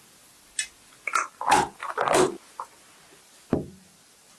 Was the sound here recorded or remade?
recorded